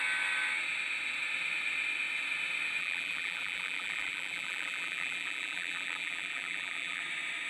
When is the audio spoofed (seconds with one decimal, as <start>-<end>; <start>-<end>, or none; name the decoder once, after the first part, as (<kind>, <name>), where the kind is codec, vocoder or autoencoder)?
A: 2.8-7.0 (vocoder, BigVGAN v2)